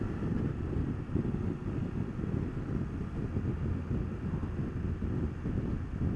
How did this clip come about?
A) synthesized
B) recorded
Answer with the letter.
B